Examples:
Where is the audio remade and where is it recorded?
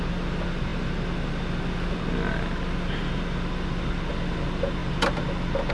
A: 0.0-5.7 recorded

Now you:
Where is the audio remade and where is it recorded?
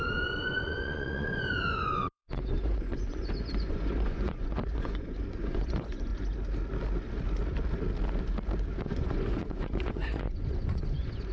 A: 0.0-6.1 remade; 6.1-8.8 recorded; 8.8-11.3 remade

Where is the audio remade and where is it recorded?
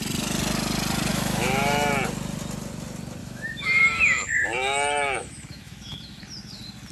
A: 0.0-1.1 recorded; 1.1-1.9 remade; 1.9-3.2 recorded; 3.2-6.2 remade; 6.2-6.9 recorded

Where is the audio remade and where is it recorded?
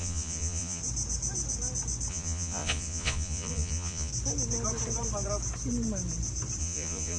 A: 0.0-0.8 remade; 0.8-2.1 recorded; 2.1-4.1 remade; 4.1-6.6 recorded; 6.6-7.2 remade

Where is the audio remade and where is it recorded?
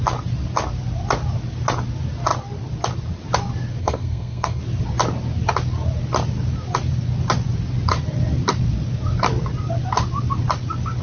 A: 0.0-3.8 recorded; 3.8-4.6 remade; 4.6-11.0 recorded